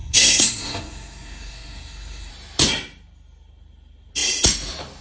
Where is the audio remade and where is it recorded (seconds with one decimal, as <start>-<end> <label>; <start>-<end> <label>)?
0.0-2.3 remade; 2.3-5.0 recorded